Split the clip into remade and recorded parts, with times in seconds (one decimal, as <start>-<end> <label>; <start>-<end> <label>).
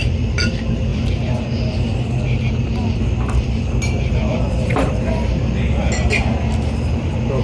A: 0.0-7.4 recorded